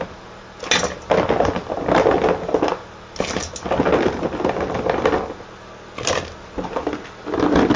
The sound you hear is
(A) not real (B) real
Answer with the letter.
B